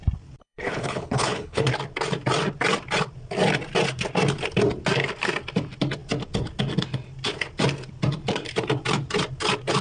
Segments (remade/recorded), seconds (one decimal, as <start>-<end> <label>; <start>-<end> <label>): 0.0-0.4 recorded; 0.4-1.7 remade; 1.7-9.8 recorded